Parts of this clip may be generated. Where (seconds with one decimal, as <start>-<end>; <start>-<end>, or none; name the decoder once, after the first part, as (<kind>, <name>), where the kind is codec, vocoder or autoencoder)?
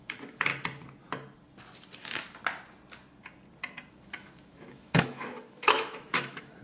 0.0-0.5 (autoencoder, DAC-VAE); 3.9-6.6